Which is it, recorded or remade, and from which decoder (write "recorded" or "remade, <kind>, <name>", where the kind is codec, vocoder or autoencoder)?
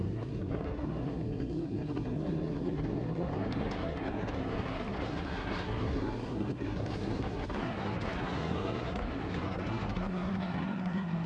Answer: remade, codec, SNAC